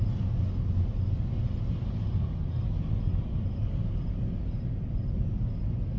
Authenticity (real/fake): real